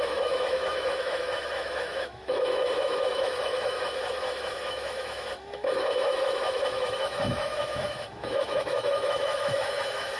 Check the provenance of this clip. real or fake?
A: fake